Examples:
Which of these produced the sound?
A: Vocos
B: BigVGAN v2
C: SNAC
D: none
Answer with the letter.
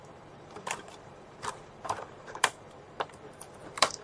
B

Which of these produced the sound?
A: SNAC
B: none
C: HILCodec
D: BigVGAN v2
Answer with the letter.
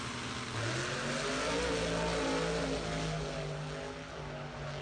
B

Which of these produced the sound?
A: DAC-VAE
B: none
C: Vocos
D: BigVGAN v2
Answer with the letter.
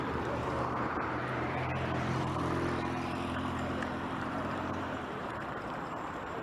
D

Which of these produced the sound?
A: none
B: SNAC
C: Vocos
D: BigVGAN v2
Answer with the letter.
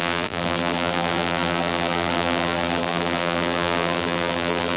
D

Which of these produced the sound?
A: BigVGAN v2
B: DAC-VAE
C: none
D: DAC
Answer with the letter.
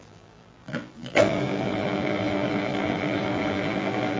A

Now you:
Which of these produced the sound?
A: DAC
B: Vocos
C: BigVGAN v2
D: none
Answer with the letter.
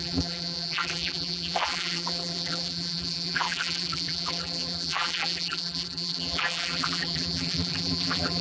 C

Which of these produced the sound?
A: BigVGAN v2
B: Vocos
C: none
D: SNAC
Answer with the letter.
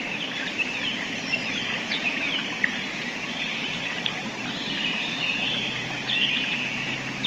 A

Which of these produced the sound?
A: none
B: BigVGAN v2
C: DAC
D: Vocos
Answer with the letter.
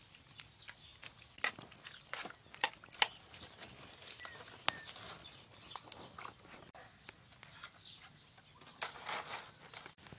A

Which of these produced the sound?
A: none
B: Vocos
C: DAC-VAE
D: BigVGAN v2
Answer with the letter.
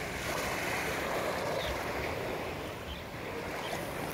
A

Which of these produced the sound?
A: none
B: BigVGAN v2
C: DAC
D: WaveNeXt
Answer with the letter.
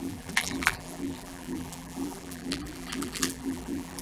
B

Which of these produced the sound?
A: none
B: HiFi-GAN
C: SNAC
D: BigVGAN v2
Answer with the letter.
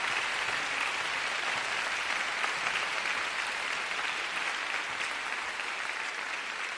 A